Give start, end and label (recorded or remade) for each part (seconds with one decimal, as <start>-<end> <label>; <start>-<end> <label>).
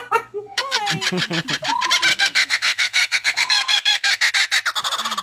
0.0-0.8 remade; 0.8-2.1 recorded; 2.1-4.3 remade; 4.3-5.2 recorded